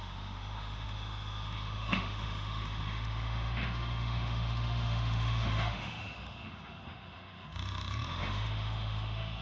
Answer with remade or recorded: remade